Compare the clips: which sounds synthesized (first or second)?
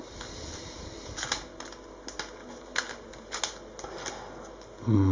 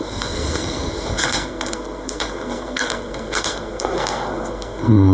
second